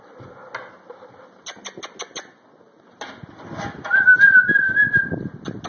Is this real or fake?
real